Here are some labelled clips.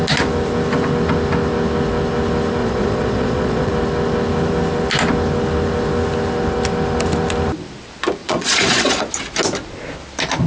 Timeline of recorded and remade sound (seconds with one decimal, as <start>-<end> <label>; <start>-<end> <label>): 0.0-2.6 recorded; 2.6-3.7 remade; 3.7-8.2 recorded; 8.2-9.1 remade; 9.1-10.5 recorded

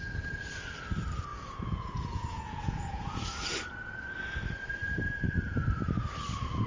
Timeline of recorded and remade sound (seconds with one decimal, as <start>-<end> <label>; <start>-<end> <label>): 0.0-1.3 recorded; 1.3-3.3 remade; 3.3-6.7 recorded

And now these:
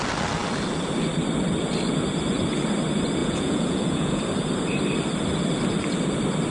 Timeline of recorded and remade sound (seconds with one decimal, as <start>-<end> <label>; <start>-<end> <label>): 0.0-3.2 recorded; 3.2-4.2 remade; 4.2-6.5 recorded

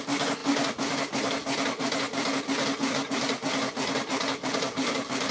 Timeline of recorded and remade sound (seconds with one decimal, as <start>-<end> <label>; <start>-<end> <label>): 0.0-5.3 recorded

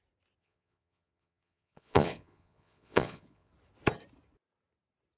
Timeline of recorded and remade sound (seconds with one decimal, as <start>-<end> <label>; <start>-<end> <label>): 0.0-0.4 recorded; 0.4-3.5 remade; 3.5-5.2 recorded

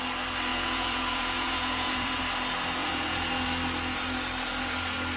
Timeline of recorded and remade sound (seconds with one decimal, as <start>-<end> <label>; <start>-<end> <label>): 0.0-0.5 recorded; 0.5-2.2 remade; 2.2-2.8 recorded; 2.8-3.3 remade; 3.3-5.2 recorded

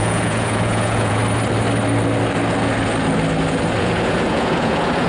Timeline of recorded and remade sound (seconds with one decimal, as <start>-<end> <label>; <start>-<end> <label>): 0.0-1.2 remade; 1.2-3.8 recorded; 3.8-5.1 remade

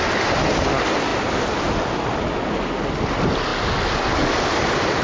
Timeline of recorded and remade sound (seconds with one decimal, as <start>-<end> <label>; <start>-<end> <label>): 0.0-5.0 recorded